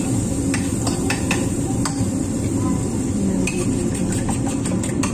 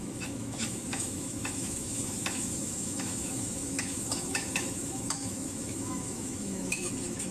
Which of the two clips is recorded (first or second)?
first